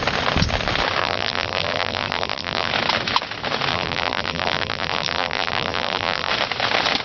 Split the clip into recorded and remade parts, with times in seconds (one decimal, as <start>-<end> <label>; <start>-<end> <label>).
0.0-1.0 recorded; 1.0-2.7 remade; 2.7-3.7 recorded; 3.7-6.3 remade; 6.3-7.0 recorded